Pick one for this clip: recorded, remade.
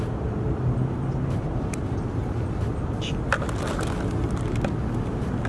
recorded